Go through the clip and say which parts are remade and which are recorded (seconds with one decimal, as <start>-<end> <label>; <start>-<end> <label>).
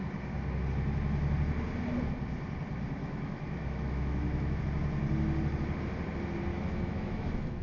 0.0-3.0 recorded; 3.0-4.6 remade; 4.6-6.5 recorded; 6.5-7.6 remade